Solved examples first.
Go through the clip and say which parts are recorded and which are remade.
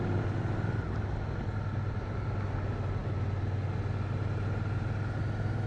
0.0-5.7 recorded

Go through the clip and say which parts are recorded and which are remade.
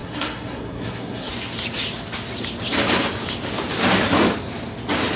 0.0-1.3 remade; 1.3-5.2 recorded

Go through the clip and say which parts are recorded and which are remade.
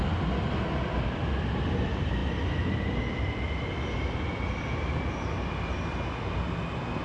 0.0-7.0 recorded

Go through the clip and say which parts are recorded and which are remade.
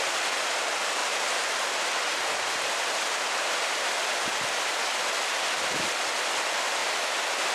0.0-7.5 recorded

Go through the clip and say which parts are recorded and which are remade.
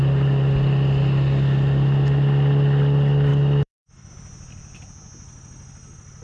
0.0-3.3 recorded; 3.3-4.1 remade; 4.1-6.2 recorded